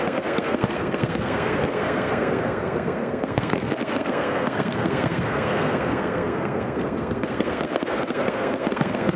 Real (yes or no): no